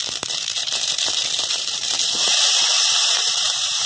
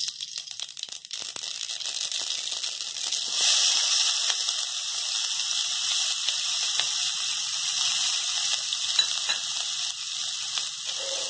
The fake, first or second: first